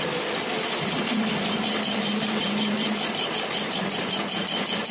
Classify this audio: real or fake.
real